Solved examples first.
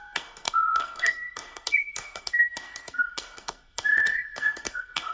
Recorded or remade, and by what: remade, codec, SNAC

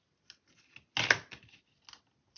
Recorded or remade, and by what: recorded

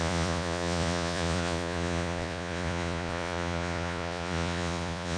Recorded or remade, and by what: remade, vocoder, Vocos